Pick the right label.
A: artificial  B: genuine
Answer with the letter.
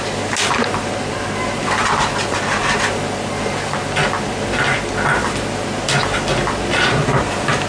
B